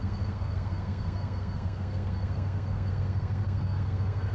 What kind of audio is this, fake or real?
fake